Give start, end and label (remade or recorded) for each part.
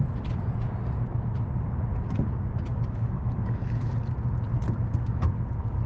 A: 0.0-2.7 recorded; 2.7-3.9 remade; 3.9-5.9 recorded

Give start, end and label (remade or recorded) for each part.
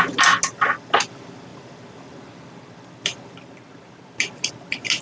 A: 0.0-5.0 recorded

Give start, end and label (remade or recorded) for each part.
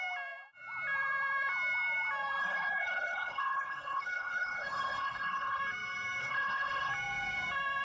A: 0.0-2.4 recorded; 2.4-5.6 remade; 5.6-6.2 recorded; 6.2-6.9 remade; 6.9-7.8 recorded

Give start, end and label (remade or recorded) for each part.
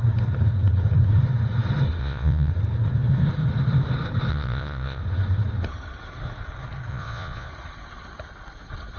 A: 0.0-2.0 recorded; 2.0-2.5 remade; 2.5-4.3 recorded; 4.3-5.0 remade; 5.0-6.9 recorded; 6.9-7.5 remade; 7.5-9.0 recorded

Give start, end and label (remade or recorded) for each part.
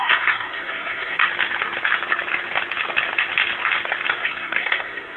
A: 0.0-1.2 remade; 1.2-4.2 recorded; 4.2-5.2 remade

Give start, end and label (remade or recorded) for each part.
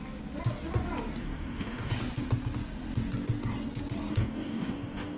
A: 0.0-1.2 recorded; 1.2-1.9 remade; 1.9-4.1 recorded; 4.1-5.2 remade